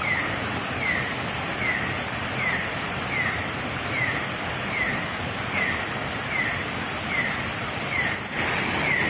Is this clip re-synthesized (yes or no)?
no